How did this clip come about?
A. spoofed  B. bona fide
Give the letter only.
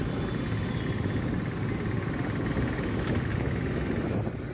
B